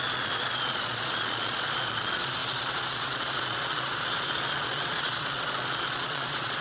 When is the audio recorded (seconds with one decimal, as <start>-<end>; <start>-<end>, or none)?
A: none